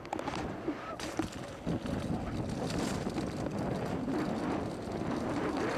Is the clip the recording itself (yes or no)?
yes